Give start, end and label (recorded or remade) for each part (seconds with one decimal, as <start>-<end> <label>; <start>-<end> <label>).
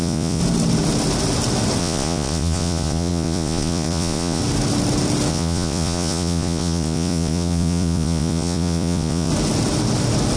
0.0-0.4 remade; 0.4-1.8 recorded; 1.8-4.4 remade; 4.4-5.3 recorded; 5.3-9.3 remade; 9.3-10.4 recorded